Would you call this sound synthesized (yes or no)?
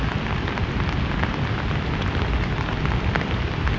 no